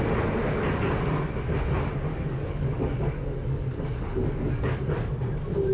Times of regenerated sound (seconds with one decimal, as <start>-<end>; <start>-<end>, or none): 2.1-5.1